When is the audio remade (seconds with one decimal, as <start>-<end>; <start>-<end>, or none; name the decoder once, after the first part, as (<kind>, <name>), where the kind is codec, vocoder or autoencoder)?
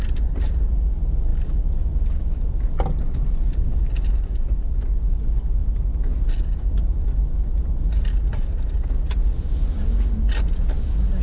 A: none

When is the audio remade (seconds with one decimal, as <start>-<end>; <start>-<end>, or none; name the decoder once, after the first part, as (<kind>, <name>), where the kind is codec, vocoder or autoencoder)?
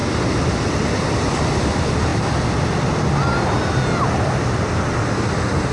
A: none